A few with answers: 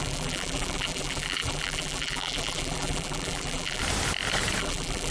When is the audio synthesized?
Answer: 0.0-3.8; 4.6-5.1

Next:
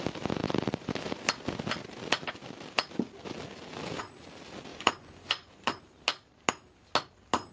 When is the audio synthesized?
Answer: 4.7-5.8